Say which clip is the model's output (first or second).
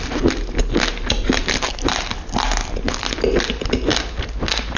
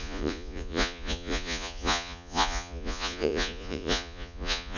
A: second